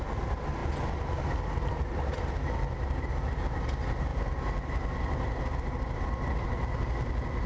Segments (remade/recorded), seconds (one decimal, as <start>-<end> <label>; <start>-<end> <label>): 0.0-7.5 recorded